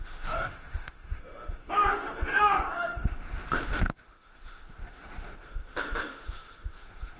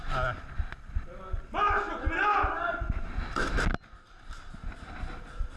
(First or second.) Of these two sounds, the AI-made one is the first